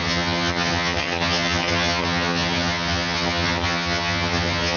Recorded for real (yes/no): no